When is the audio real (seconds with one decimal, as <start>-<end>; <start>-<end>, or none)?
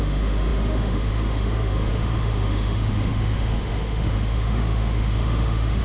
none